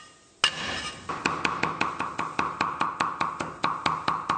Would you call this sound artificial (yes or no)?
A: no